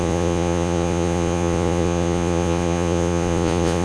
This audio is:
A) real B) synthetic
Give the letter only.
B